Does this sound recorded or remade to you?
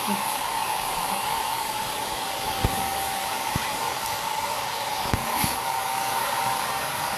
remade